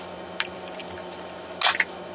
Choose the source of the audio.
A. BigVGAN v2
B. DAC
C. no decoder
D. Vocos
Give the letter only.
C